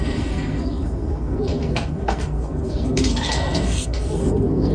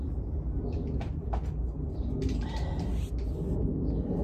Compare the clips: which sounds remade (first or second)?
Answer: first